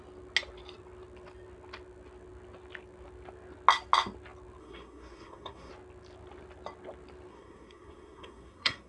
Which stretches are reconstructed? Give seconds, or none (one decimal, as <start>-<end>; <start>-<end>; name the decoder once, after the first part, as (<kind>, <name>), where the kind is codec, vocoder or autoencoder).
4.6-5.7 (codec, SNAC); 7.3-8.9